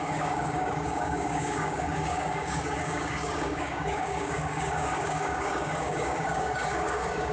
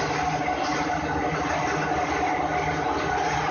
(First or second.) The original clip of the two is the second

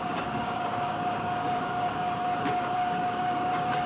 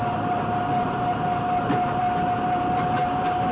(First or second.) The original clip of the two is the second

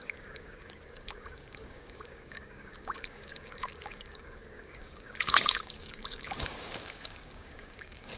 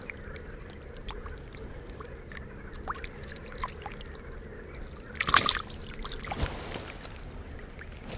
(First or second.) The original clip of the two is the second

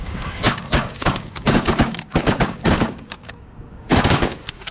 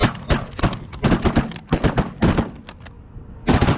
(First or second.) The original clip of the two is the second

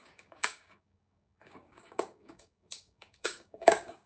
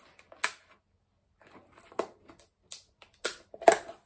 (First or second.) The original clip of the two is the second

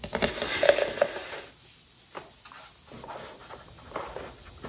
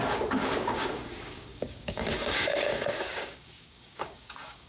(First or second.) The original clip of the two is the first